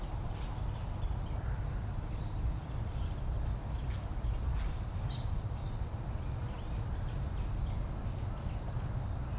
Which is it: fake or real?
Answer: real